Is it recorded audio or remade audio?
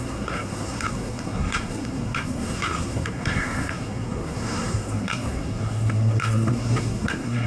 remade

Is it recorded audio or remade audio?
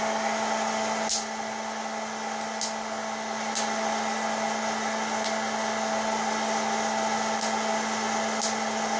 recorded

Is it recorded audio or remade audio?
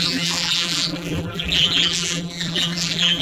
remade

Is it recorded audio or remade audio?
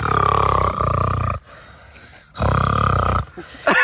recorded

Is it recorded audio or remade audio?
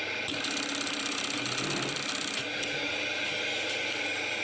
recorded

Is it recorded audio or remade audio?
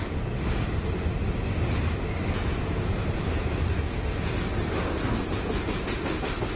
recorded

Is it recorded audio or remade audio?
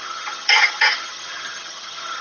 remade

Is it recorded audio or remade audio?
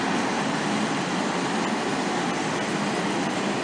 recorded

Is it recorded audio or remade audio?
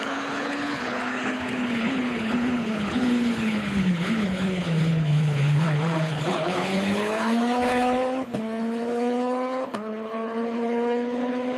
remade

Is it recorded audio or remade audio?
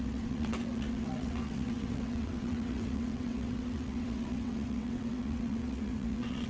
remade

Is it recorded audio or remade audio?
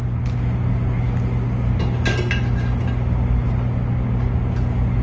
recorded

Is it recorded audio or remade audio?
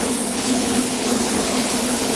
remade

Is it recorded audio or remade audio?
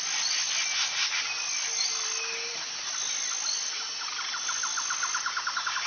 recorded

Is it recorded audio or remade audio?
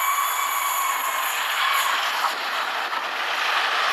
recorded